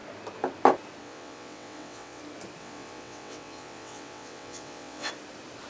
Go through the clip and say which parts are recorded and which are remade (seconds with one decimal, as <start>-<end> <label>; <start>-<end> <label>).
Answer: 0.0-1.0 recorded; 1.0-2.2 remade; 2.2-2.6 recorded; 2.6-5.1 remade; 5.1-5.7 recorded